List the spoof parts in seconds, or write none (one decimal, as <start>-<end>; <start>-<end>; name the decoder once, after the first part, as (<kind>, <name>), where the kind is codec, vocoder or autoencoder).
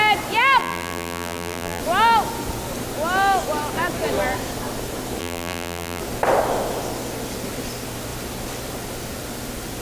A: 0.6-1.8 (vocoder, BigVGAN v2); 5.2-6.0